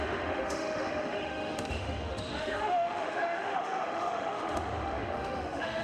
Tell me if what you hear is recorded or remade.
remade